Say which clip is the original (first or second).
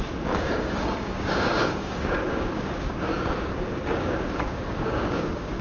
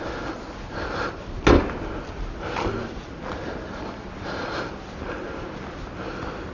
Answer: second